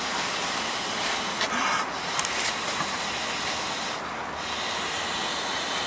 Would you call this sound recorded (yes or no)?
yes